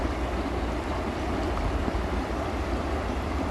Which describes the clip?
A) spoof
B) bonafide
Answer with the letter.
B